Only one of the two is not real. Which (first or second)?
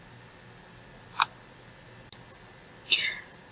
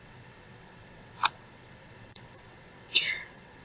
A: second